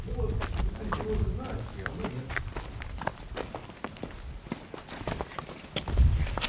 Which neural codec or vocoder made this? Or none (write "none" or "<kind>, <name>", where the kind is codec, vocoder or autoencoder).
none